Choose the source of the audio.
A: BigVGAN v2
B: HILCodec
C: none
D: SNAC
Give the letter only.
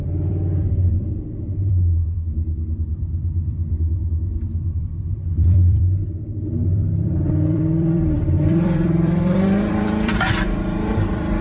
A